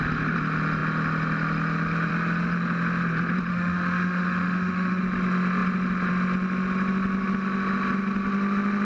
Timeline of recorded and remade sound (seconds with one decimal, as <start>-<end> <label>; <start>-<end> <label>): 0.0-3.5 recorded; 3.5-5.0 remade; 5.0-8.8 recorded